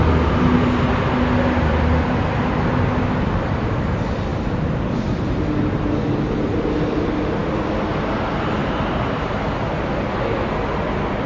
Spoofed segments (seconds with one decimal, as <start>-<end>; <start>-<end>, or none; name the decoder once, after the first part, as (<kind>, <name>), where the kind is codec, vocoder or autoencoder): 8.6-9.2 (vocoder, BigVGAN v2)